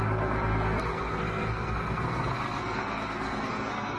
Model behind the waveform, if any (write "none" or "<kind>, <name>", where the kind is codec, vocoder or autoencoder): codec, SNAC